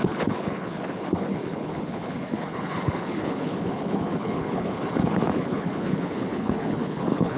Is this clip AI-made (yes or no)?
yes